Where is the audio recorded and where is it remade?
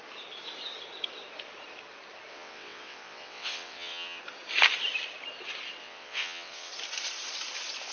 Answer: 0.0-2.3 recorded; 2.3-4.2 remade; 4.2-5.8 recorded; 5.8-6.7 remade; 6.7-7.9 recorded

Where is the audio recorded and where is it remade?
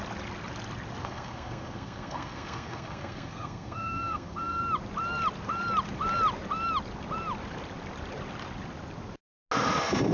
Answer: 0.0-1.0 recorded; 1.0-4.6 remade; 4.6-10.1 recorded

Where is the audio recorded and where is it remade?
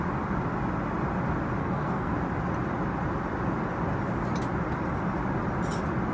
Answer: 0.0-1.6 recorded; 1.6-2.1 remade; 2.1-6.1 recorded